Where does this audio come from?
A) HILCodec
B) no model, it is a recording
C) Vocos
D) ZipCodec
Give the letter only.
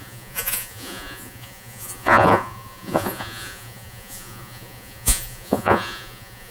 C